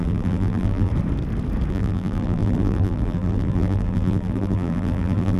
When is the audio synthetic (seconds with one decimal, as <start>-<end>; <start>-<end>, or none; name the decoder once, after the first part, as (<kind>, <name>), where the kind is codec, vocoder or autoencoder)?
0.0-0.9 (vocoder, BigVGAN v2); 1.7-5.4